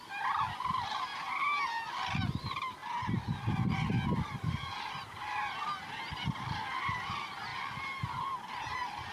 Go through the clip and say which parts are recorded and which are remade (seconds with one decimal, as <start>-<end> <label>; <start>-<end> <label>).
0.0-7.5 recorded; 7.5-8.5 remade; 8.5-9.1 recorded